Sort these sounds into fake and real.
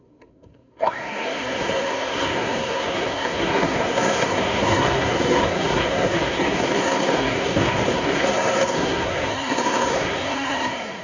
fake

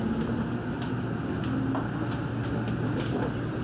real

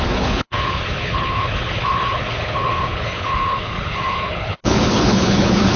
fake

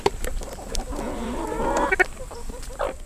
fake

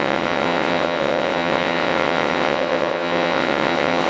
fake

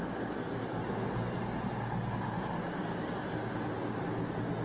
real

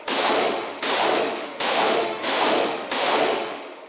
fake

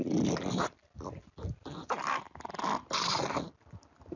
real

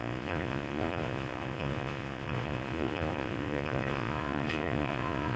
fake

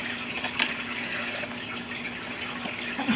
real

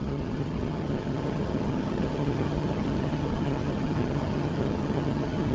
fake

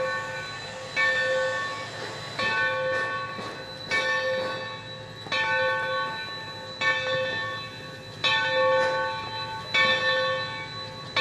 real